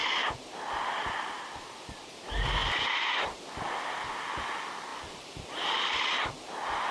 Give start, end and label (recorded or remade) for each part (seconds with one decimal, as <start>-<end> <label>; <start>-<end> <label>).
0.0-2.6 recorded; 2.6-3.2 remade; 3.2-4.9 recorded; 4.9-5.6 remade; 5.6-6.9 recorded